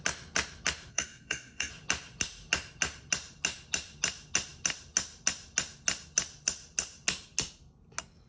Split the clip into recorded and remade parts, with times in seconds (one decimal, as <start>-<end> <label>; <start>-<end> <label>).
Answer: 0.0-0.9 recorded; 0.9-1.7 remade; 1.7-8.3 recorded